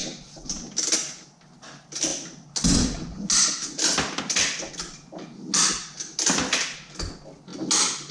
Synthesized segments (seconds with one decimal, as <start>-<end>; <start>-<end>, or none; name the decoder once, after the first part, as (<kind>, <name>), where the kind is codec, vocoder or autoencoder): none